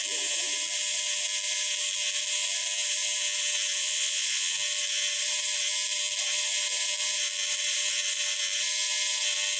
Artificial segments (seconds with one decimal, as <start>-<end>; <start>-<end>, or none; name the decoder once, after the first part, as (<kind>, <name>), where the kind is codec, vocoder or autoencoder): 3.8-4.5 (vocoder, Vocos)